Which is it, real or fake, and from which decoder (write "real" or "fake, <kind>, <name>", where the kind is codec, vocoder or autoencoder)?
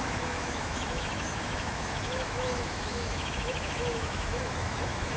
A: fake, autoencoder, DAC-VAE